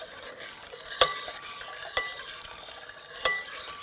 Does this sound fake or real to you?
real